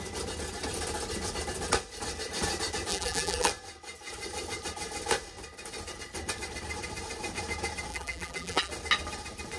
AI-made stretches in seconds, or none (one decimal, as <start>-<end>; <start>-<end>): 2.9-3.5; 7.9-8.7